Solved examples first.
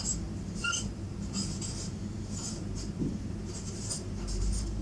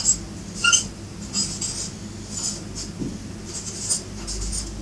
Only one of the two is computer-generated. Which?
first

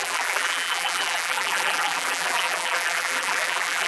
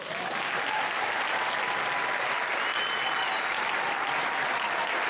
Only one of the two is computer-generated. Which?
first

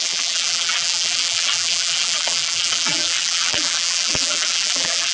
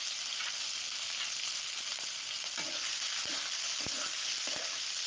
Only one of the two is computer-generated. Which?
first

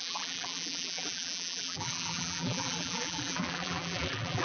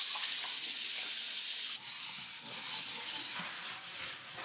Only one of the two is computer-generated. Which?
first